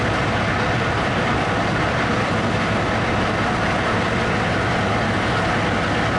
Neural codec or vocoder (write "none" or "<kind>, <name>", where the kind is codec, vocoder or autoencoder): none